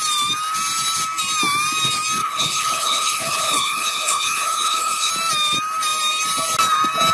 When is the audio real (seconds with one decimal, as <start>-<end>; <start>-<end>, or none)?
0.0-2.2; 5.1-7.1